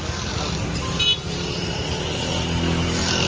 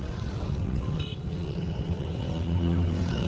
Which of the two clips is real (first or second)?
first